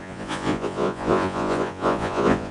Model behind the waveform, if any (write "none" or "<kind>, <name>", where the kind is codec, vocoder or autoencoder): vocoder, Vocos